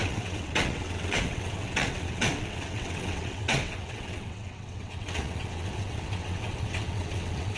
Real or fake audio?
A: fake